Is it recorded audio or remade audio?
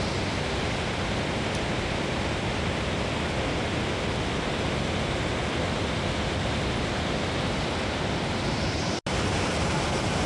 recorded